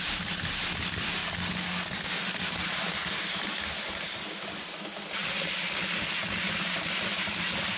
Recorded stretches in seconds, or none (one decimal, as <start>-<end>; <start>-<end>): 0.0-1.2; 2.0-7.8